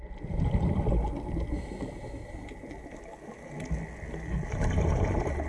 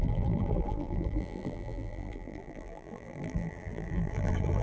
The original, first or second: first